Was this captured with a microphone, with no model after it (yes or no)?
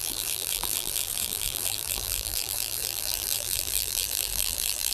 no